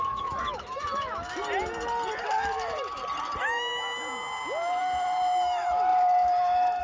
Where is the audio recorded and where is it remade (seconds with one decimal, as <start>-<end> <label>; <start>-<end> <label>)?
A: 0.0-1.4 remade; 1.4-2.2 recorded; 2.2-3.0 remade; 3.0-4.8 recorded; 4.8-6.8 remade